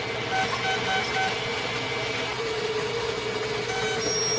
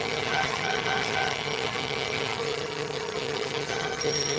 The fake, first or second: second